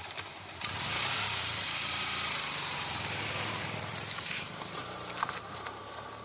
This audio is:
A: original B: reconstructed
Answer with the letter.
B